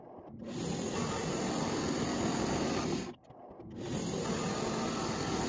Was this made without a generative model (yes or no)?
yes